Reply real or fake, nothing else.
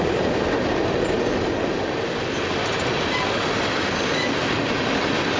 real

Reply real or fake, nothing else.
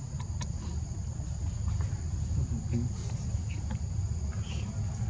real